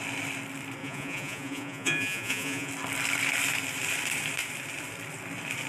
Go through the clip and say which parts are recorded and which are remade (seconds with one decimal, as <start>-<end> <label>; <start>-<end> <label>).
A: 0.0-0.8 recorded; 0.8-2.7 remade; 2.7-5.7 recorded